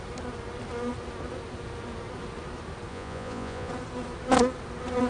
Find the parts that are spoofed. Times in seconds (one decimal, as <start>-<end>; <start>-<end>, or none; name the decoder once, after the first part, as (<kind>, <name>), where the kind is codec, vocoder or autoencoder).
2.9-3.7 (vocoder, Vocos)